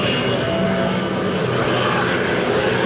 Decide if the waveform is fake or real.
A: real